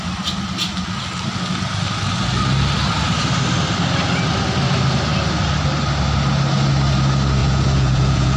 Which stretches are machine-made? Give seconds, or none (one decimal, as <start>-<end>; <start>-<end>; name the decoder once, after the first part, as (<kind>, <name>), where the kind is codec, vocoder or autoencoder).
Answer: 7.4-8.4 (vocoder, Vocos)

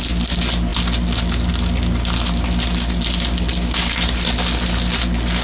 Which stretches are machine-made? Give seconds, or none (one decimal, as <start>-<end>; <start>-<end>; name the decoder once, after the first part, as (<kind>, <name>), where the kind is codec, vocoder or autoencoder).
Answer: none

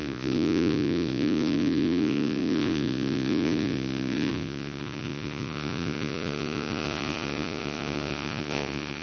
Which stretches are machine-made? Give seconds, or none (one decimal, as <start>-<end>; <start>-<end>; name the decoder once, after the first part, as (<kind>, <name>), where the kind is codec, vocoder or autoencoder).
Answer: 0.0-9.0 (vocoder, Vocos)

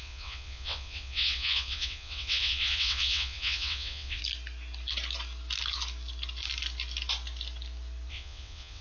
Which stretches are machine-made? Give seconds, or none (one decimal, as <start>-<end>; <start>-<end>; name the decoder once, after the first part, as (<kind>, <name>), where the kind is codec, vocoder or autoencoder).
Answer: 0.0-4.2 (vocoder, WaveNeXt); 8.1-8.8

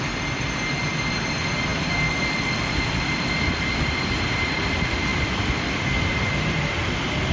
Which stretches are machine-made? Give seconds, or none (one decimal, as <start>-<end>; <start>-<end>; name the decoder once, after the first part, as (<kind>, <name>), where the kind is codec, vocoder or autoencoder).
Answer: none

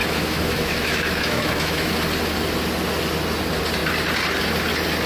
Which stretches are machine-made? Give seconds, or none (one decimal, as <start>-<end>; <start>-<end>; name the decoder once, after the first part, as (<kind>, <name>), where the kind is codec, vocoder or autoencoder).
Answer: 0.0-1.9 (autoencoder, DAC-VAE)

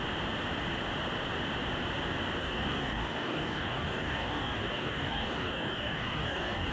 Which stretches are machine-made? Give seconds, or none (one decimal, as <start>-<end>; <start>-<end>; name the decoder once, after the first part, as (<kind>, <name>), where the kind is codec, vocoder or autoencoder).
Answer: 2.4-6.7 (codec, DAC)

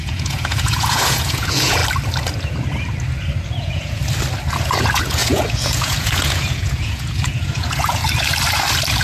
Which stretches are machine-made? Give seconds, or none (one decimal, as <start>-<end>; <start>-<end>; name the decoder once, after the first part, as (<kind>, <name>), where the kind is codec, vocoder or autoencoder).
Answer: 0.0-1.8 (vocoder, Vocos); 3.6-4.0; 4.6-8.0